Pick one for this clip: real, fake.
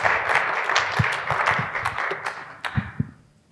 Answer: real